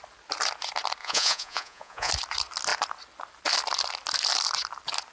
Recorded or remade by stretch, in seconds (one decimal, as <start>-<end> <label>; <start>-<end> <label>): 0.0-1.0 recorded; 1.0-2.1 remade; 2.1-5.1 recorded